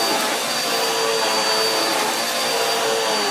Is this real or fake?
real